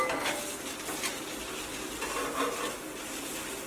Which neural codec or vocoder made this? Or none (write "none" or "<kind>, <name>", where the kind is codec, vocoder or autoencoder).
none